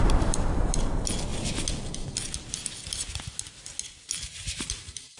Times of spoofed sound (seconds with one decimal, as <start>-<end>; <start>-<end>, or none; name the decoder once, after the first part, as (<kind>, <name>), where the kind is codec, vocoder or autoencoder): 0.0-1.3 (vocoder, BigVGAN v2); 4.0-5.2